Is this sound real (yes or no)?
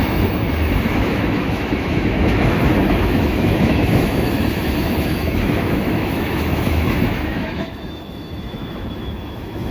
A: no